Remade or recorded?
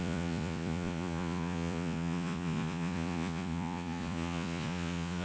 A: remade